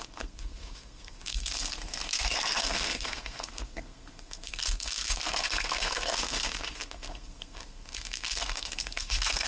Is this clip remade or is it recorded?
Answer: remade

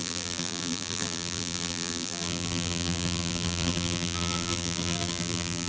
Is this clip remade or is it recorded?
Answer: remade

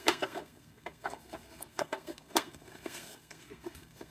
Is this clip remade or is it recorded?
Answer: remade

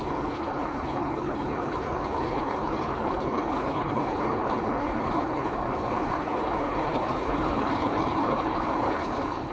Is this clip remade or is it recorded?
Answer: remade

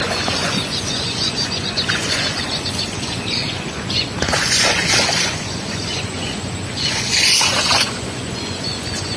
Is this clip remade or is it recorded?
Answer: remade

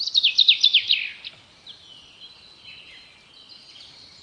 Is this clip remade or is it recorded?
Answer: recorded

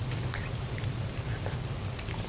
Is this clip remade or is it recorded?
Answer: recorded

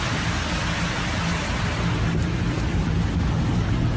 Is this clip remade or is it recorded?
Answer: recorded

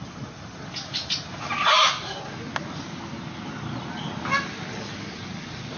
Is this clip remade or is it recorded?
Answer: recorded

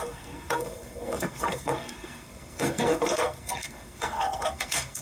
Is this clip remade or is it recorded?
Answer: remade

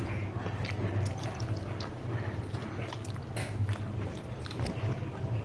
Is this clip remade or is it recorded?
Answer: recorded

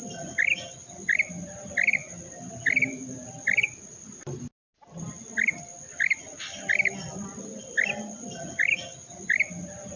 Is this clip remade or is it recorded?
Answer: recorded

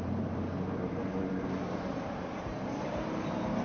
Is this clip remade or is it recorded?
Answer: remade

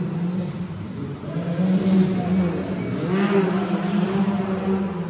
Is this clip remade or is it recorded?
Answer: recorded